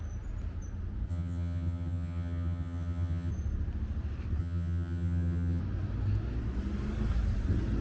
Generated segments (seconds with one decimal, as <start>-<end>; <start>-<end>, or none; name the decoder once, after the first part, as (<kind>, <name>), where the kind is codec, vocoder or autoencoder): 1.1-3.3 (vocoder, HiFi-GAN); 4.4-5.6